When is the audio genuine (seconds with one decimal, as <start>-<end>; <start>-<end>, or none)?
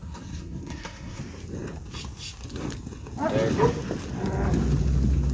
1.2-5.3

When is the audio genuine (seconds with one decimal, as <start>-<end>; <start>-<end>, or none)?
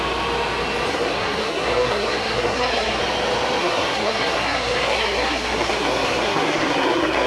0.0-0.9; 3.0-3.6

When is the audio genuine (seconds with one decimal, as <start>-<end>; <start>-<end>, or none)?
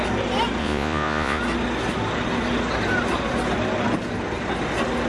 0.0-0.6; 1.4-5.1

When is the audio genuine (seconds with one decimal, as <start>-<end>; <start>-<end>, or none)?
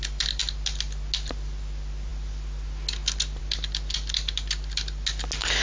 0.0-5.6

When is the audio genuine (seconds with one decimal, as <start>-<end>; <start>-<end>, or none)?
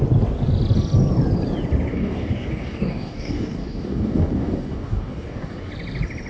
0.0-1.9; 5.7-6.3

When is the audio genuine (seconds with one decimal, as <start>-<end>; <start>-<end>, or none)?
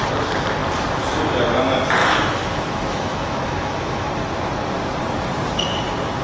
0.0-2.0; 4.1-6.2